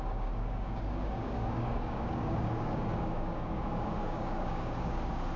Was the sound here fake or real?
fake